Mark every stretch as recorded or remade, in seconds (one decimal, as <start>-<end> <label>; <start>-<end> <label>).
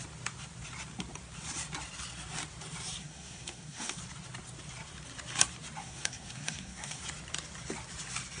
0.0-3.0 recorded; 3.0-4.0 remade; 4.0-5.8 recorded; 5.8-7.0 remade; 7.0-8.4 recorded